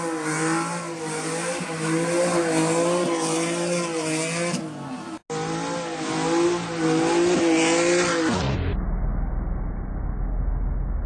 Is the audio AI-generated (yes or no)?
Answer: no